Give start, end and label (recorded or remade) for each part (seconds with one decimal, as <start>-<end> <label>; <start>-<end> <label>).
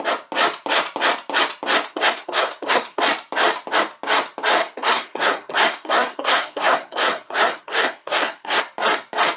0.0-1.9 recorded; 1.9-3.0 remade; 3.0-4.6 recorded; 4.6-8.6 remade; 8.6-9.4 recorded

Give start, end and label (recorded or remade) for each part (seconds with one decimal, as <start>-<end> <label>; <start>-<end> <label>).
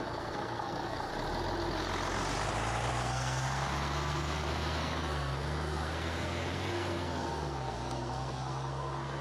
0.0-1.1 remade; 1.1-2.9 recorded; 2.9-9.2 remade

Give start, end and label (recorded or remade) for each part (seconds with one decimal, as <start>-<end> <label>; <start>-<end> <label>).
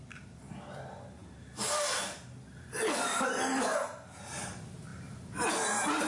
0.0-6.1 recorded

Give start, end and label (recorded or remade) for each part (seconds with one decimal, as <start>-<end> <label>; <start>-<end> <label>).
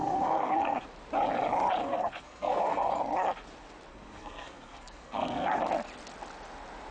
0.0-0.8 remade; 0.8-1.8 recorded; 1.8-2.9 remade; 2.9-3.9 recorded; 3.9-5.6 remade; 5.6-6.9 recorded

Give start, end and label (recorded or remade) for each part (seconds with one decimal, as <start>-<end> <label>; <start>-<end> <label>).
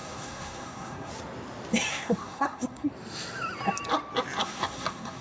0.0-1.1 remade; 1.1-1.9 recorded; 1.9-2.9 remade; 2.9-4.4 recorded; 4.4-5.2 remade